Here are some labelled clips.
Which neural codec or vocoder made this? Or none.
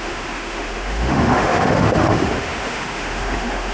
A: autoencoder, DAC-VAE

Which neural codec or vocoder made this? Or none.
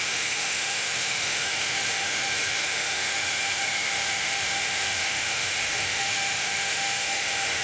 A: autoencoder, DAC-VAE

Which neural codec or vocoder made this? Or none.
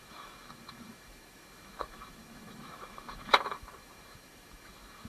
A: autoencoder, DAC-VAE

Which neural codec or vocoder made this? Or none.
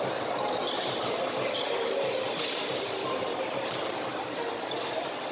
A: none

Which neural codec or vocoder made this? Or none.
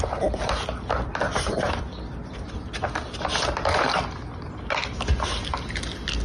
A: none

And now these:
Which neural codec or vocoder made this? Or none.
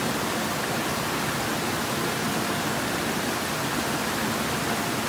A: none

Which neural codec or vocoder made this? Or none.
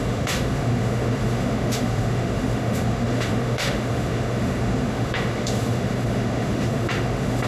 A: autoencoder, DAC-VAE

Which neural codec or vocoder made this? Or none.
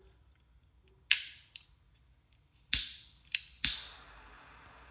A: none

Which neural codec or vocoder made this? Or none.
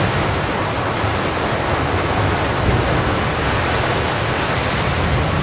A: none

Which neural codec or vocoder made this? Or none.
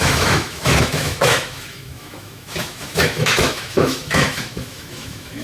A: autoencoder, DAC-VAE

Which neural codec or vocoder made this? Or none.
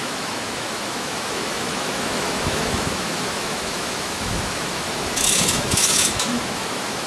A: autoencoder, DAC-VAE